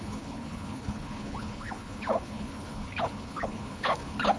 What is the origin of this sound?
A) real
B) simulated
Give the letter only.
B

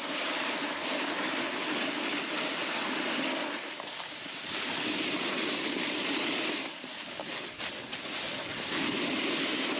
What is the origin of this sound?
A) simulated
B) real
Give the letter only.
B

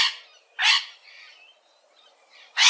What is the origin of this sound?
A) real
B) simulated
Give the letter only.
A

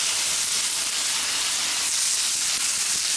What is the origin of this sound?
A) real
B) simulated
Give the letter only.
A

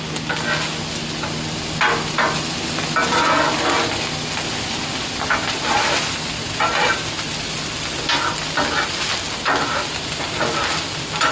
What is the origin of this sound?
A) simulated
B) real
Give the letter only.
B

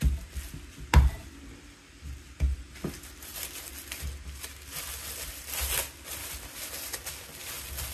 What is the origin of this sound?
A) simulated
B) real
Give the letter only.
B